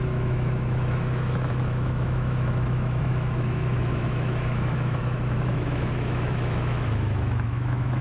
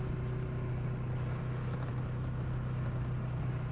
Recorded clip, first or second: second